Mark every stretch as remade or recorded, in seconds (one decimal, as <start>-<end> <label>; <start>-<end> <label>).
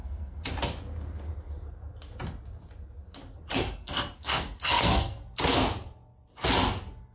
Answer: 0.0-0.5 remade; 0.5-3.5 recorded; 3.5-5.2 remade; 5.2-7.1 recorded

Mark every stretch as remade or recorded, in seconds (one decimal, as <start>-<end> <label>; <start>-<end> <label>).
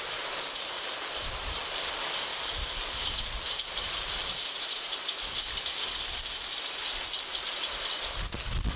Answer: 0.0-7.3 remade; 7.3-8.8 recorded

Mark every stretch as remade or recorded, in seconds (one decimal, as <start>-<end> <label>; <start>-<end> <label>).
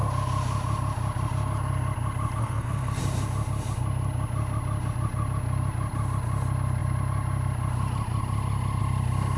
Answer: 0.0-2.4 recorded; 2.4-3.0 remade; 3.0-9.4 recorded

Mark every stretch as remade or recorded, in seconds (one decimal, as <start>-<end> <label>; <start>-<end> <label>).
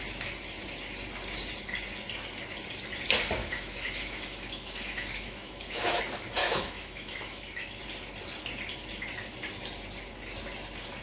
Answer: 0.0-3.4 recorded; 3.4-6.0 remade; 6.0-6.4 recorded; 6.4-7.8 remade; 7.8-11.0 recorded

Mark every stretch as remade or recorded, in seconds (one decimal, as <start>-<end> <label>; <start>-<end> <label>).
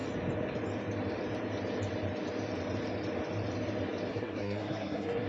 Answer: 0.0-4.1 recorded; 4.1-5.3 remade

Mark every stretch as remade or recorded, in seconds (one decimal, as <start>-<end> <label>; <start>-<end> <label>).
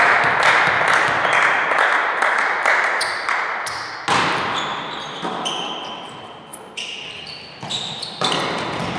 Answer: 0.0-9.0 recorded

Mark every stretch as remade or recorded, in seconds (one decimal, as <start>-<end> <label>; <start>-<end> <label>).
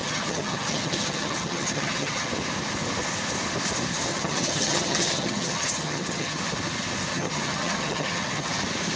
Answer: 0.0-2.3 remade; 2.3-4.1 recorded; 4.1-6.4 remade; 6.4-7.1 recorded; 7.1-8.6 remade; 8.6-9.0 recorded